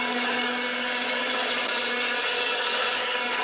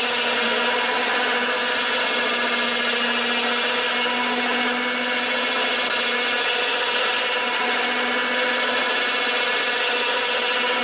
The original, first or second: second